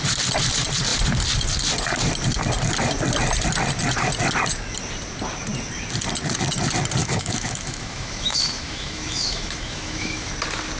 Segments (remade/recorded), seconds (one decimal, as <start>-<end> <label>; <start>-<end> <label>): 0.0-7.0 recorded; 7.0-10.3 remade; 10.3-10.8 recorded